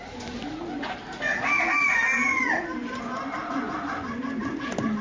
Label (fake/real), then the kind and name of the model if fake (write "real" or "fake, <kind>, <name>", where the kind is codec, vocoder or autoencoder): real